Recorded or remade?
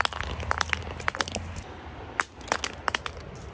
recorded